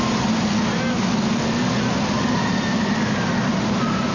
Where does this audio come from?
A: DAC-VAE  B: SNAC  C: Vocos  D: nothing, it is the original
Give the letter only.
D